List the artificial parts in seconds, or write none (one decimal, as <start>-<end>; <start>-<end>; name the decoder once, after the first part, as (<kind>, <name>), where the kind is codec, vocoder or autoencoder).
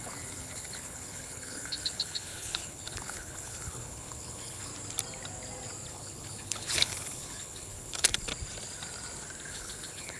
0.0-4.7 (codec, HILCodec); 5.9-8.3; 9.5-10.2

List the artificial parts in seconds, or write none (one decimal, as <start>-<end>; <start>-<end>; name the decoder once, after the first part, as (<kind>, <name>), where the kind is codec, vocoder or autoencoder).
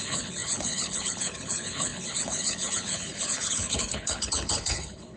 0.0-5.2 (codec, HILCodec)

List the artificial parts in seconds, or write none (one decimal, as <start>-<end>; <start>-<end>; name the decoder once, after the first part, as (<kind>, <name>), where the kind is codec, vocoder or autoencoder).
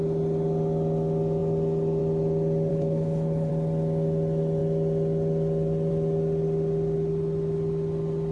2.7-3.5 (codec, HILCodec)